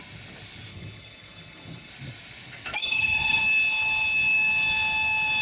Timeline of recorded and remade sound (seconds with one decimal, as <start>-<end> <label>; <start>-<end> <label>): 0.0-0.7 recorded; 0.7-1.9 remade; 1.9-2.8 recorded; 2.8-3.4 remade; 3.4-5.4 recorded